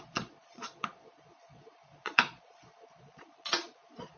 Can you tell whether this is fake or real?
fake